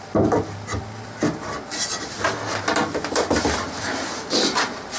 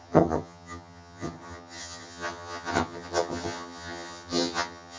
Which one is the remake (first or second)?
second